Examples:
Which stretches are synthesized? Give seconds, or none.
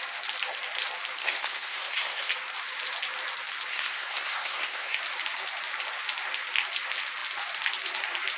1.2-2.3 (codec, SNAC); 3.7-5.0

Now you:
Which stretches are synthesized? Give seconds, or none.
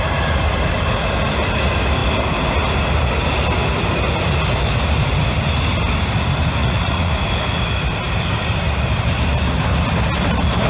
6.6-7.1 (vocoder, Vocos)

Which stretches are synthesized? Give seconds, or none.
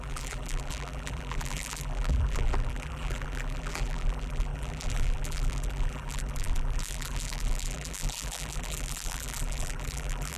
0.0-10.4 (vocoder, BigVGAN v2)